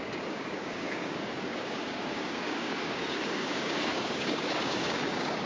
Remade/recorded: remade